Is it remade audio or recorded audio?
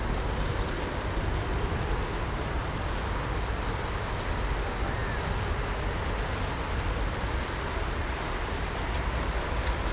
recorded